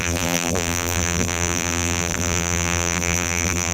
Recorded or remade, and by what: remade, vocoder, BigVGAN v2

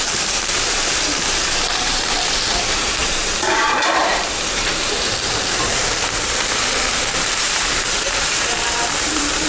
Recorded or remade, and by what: remade, vocoder, BigVGAN v2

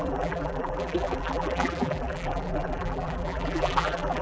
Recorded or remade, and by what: remade, vocoder, BigVGAN v2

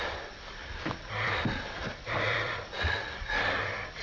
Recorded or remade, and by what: remade, vocoder, BigVGAN v2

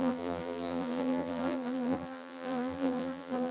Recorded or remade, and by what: remade, vocoder, BigVGAN v2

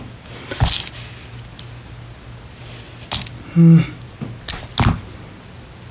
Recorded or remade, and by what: recorded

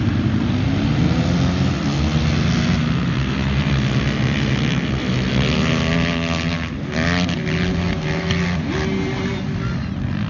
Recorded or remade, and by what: recorded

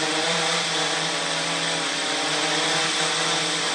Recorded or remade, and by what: remade, vocoder, BigVGAN v2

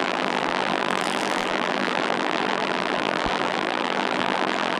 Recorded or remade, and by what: remade, vocoder, BigVGAN v2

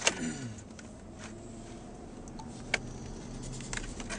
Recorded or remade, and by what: recorded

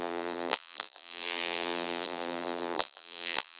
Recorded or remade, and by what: remade, vocoder, BigVGAN v2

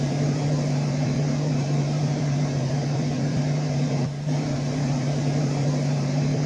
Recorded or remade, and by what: remade, vocoder, BigVGAN v2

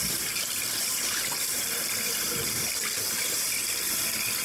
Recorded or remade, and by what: remade, vocoder, BigVGAN v2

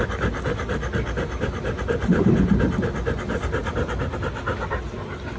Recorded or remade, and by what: recorded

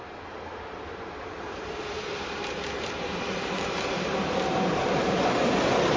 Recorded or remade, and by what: remade, vocoder, BigVGAN v2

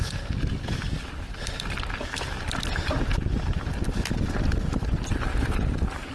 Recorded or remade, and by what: recorded